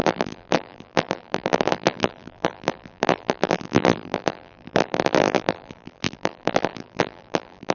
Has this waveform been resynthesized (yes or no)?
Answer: yes